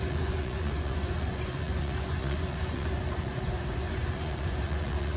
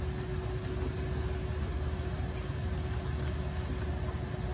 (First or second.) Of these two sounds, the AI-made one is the first